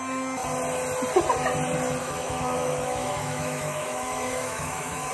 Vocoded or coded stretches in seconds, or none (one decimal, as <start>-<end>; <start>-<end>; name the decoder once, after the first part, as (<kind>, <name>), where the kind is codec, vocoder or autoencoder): 2.0-5.1 (autoencoder, DAC-VAE)